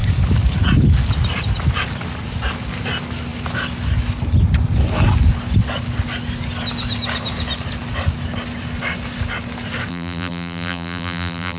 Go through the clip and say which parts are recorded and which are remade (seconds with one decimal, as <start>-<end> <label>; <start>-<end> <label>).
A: 0.0-9.9 recorded; 9.9-11.6 remade